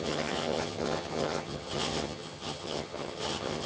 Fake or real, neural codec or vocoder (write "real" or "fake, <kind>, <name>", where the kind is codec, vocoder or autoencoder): fake, vocoder, HiFi-GAN